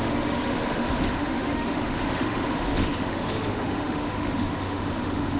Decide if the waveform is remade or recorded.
remade